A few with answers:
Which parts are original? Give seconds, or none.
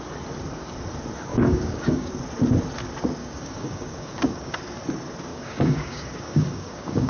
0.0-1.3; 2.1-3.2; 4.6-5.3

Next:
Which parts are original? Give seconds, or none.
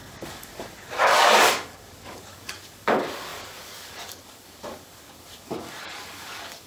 none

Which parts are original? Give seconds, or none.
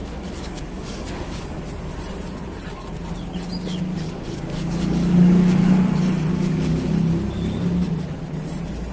1.6-3.9; 5.7-6.3; 6.9-8.9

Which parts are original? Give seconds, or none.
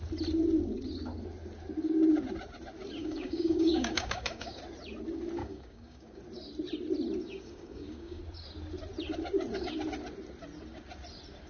0.0-3.0; 4.6-5.4; 6.2-7.2; 8.2-11.5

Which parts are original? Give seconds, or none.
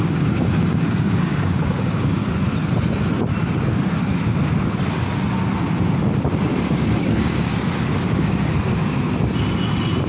2.2-7.0; 7.5-10.1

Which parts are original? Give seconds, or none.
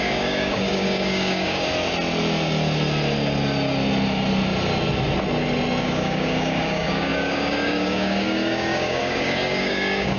1.7-5.8